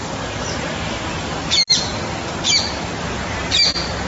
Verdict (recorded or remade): recorded